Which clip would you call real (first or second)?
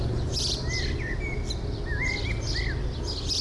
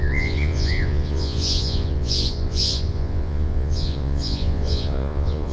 first